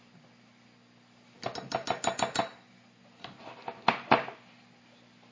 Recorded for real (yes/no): yes